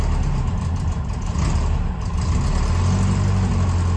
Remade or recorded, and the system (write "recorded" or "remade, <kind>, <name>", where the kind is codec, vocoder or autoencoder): recorded